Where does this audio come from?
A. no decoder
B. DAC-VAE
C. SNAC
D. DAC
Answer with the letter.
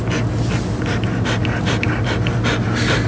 A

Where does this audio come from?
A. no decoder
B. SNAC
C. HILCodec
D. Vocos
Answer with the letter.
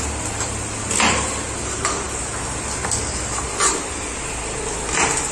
A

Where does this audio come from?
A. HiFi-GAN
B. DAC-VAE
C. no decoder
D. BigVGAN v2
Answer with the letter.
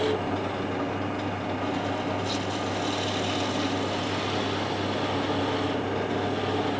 C